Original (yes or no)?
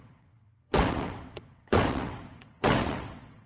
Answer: no